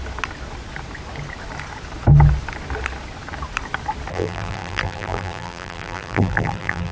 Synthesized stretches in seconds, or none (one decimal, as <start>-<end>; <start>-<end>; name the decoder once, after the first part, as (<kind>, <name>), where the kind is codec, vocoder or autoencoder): 4.1-6.9 (vocoder, BigVGAN v2)